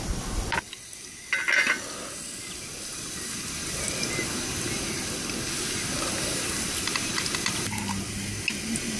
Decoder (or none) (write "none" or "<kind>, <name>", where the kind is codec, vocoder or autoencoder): none